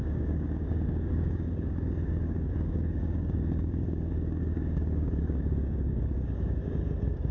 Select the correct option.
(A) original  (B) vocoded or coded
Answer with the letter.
B